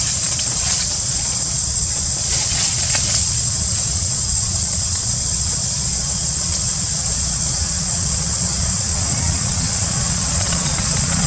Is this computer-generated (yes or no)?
yes